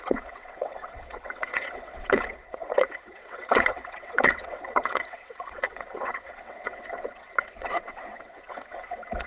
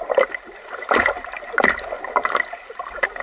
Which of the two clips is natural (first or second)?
second